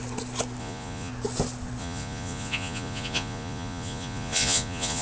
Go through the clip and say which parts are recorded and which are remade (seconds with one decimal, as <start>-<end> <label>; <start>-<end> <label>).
0.0-0.6 recorded; 0.6-1.1 remade; 1.1-1.8 recorded; 1.8-5.0 remade